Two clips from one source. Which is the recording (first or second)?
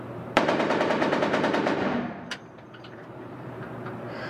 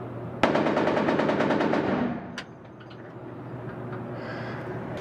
second